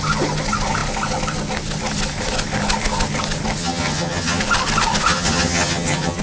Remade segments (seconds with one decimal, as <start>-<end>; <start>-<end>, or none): 3.6-4.4; 5.1-6.2